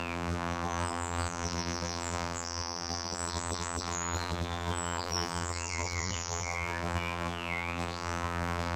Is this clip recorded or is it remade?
remade